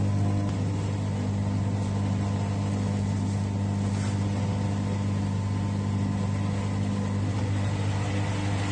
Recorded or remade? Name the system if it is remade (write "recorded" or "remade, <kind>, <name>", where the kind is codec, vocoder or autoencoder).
recorded